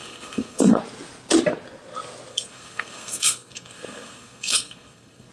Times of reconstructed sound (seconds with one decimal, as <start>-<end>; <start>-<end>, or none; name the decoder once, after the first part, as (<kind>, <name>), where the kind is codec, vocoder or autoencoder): 0.0-0.8 (codec, SNAC); 2.3-5.3